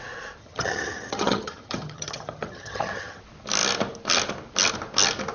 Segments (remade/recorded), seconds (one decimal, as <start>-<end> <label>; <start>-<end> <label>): 0.0-0.4 recorded; 0.4-3.2 remade; 3.2-5.3 recorded

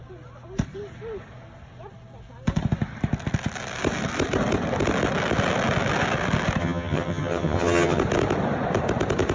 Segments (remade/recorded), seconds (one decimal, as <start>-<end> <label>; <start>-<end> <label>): 0.0-6.6 recorded; 6.6-8.0 remade; 8.0-9.3 recorded